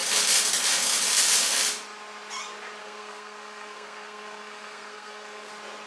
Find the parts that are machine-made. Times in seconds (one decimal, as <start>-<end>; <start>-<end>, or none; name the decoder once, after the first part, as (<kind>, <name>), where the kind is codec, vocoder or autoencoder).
2.8-5.5 (codec, SNAC)